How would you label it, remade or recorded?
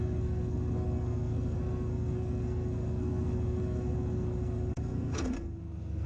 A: remade